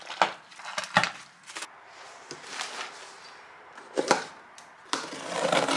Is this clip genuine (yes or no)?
yes